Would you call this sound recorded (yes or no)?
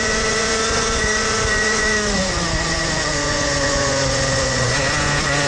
no